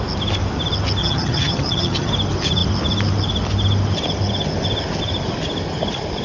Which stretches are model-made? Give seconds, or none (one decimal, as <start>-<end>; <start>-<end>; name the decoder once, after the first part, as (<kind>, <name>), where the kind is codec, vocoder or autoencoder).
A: 1.0-2.1 (vocoder, HiFi-GAN)